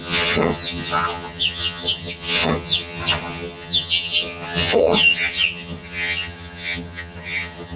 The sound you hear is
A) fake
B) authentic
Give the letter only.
A